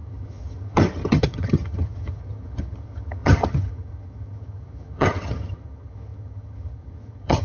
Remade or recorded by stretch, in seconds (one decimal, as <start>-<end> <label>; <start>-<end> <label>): 0.0-7.4 remade